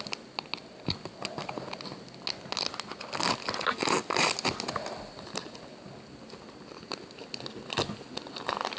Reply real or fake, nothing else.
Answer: real